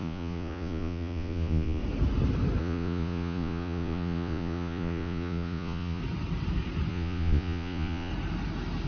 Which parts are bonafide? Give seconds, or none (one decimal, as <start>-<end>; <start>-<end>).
1.8-2.6; 6.0-6.9; 8.1-8.9

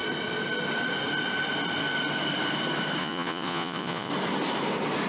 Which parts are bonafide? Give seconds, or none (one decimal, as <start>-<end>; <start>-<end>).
0.0-3.0; 4.1-5.1

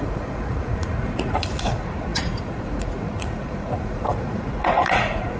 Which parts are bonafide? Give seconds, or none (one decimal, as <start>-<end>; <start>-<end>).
none

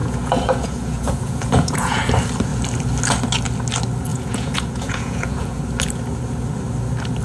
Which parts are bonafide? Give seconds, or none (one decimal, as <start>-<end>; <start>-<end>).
2.0-4.1; 5.6-7.2

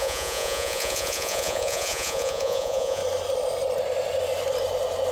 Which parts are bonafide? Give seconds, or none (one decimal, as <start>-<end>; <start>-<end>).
3.0-5.1

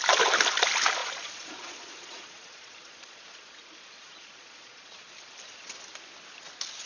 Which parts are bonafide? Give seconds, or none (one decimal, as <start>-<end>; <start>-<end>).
0.0-1.0; 5.1-6.9

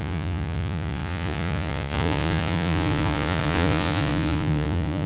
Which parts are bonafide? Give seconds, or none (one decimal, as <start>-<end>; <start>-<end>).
none

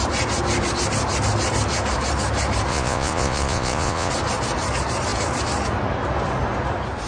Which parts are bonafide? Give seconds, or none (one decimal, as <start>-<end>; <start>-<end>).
0.0-2.7; 4.1-7.1